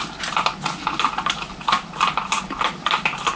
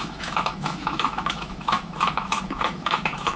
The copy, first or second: second